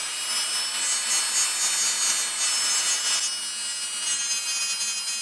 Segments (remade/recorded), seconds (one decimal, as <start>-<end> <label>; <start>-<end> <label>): 0.0-5.2 recorded